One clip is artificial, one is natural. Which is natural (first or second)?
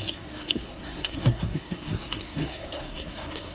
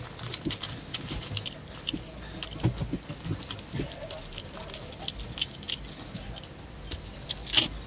second